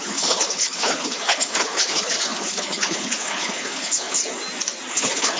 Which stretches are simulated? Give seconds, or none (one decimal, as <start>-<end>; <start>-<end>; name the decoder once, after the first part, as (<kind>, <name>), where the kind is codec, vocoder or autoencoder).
0.0-4.2 (codec, HILCodec); 4.9-5.4

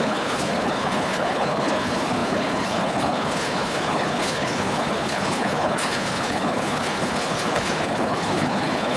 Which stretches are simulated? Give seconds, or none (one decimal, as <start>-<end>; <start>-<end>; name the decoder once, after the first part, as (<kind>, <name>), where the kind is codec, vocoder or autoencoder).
0.0-9.0 (codec, HILCodec)

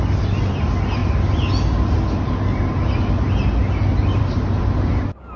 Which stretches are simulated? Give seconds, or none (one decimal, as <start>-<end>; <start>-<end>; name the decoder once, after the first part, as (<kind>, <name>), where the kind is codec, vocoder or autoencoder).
none

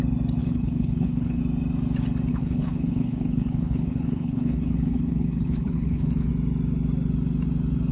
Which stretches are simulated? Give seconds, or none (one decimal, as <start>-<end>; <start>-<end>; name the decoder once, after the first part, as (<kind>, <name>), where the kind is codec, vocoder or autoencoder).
0.4-1.4 (codec, HILCodec); 2.3-6.3

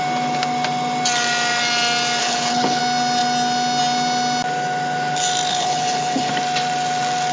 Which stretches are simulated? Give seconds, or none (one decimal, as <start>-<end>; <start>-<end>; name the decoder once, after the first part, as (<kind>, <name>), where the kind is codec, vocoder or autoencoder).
2.2-2.8 (codec, HILCodec); 5.5-6.3

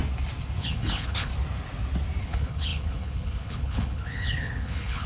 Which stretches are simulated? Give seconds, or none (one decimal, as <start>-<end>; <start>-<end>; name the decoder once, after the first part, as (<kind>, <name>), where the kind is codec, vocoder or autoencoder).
0.6-1.3 (codec, HILCodec); 2.2-5.1

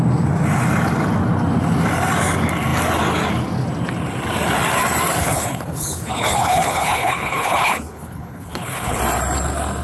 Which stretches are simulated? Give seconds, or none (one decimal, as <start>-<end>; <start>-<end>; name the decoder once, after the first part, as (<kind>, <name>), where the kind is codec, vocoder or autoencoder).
5.2-9.0 (codec, HILCodec)

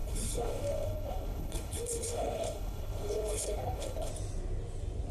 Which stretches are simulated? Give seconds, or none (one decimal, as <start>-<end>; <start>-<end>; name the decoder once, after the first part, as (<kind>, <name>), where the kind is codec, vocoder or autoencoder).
0.0-4.1 (codec, HILCodec)